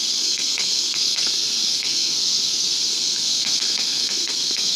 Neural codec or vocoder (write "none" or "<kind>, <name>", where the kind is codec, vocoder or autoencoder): codec, SNAC